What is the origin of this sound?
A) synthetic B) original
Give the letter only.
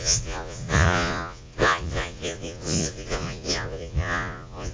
A